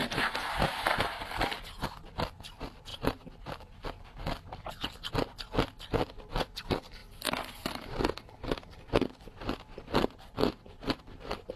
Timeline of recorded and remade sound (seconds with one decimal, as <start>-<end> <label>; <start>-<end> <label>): 0.0-11.6 recorded